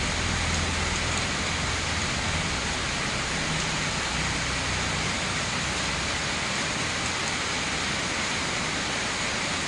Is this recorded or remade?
recorded